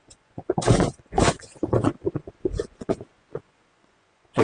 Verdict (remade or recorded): remade